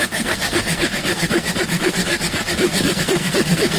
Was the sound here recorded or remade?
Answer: remade